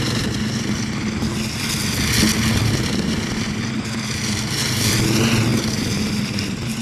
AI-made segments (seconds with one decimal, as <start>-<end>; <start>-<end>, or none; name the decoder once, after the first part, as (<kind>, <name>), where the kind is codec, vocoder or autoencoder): none